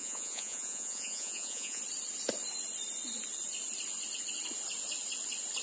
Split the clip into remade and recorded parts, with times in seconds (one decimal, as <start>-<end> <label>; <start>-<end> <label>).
0.0-1.8 remade; 1.8-5.6 recorded

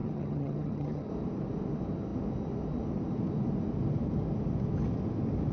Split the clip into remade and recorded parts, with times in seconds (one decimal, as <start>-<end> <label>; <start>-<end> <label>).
0.0-1.1 remade; 1.1-5.5 recorded

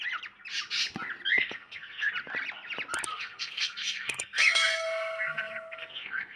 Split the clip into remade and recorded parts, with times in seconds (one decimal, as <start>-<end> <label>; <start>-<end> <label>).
0.0-1.3 recorded; 1.3-2.1 remade; 2.1-3.1 recorded; 3.1-6.4 remade

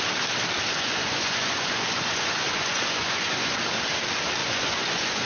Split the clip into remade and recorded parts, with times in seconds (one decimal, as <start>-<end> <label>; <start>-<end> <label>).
0.0-0.7 recorded; 0.7-3.6 remade; 3.6-4.4 recorded; 4.4-5.3 remade

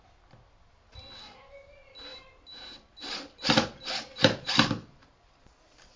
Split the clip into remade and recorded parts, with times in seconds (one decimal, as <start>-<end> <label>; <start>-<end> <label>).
0.0-2.1 recorded; 2.1-6.0 remade

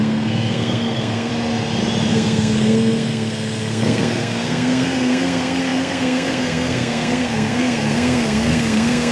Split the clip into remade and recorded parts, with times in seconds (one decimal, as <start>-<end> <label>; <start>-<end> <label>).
0.0-1.3 remade; 1.3-2.1 recorded; 2.1-9.1 remade

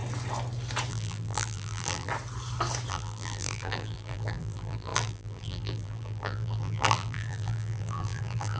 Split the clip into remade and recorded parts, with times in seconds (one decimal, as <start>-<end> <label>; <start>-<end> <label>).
0.0-0.9 recorded; 0.9-2.1 remade; 2.1-2.9 recorded; 2.9-8.6 remade

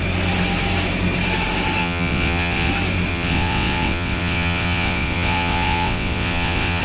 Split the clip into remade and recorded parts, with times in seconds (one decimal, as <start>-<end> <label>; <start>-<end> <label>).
0.0-1.8 recorded; 1.8-2.7 remade; 2.7-3.1 recorded; 3.1-6.8 remade